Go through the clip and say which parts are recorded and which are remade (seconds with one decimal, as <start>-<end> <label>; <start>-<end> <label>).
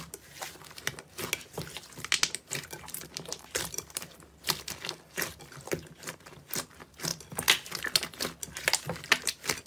0.0-9.7 recorded